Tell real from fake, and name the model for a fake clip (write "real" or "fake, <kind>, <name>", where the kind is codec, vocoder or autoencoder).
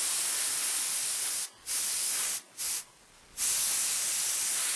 real